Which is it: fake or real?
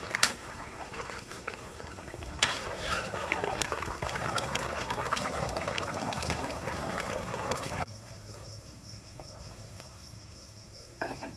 fake